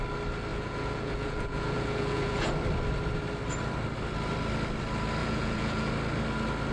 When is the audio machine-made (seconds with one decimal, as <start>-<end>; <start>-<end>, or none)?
0.5-2.5; 5.2-5.9